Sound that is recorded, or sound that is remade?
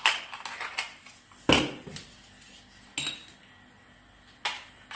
recorded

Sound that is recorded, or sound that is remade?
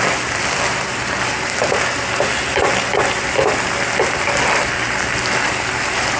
recorded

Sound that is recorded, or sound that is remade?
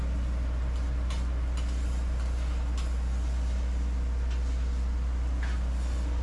recorded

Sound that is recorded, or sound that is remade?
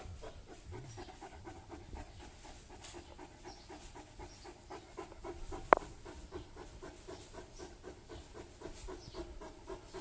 recorded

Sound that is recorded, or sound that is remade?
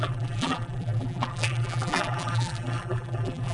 remade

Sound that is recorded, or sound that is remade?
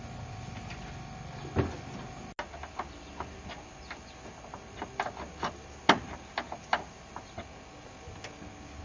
recorded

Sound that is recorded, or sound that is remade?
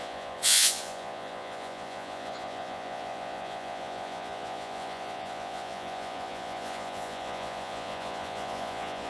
remade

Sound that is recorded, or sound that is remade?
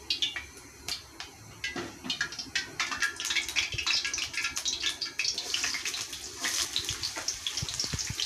recorded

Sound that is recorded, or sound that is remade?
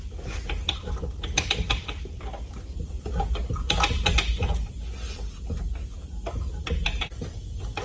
recorded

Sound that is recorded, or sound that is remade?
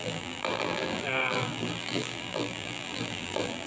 remade